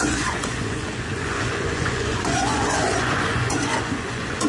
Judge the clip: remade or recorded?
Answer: remade